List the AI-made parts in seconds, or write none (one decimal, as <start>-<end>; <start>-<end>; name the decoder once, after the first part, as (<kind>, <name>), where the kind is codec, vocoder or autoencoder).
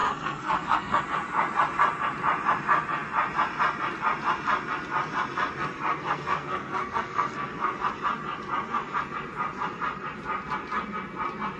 0.0-1.0 (codec, SNAC); 5.9-7.7